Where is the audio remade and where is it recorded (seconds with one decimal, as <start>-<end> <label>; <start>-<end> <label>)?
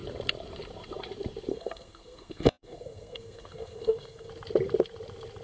0.0-1.5 recorded; 1.5-4.3 remade; 4.3-5.4 recorded